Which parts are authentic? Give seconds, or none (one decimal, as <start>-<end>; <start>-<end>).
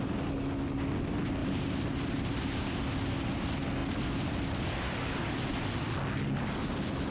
0.0-1.4; 2.7-7.1